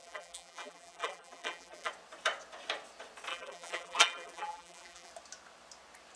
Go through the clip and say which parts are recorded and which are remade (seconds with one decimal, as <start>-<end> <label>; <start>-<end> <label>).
0.0-1.9 remade; 1.9-3.3 recorded; 3.3-5.1 remade; 5.1-6.2 recorded